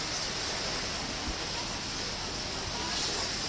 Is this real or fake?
real